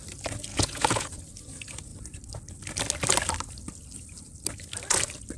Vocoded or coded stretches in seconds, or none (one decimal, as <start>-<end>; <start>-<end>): 0.5-1.2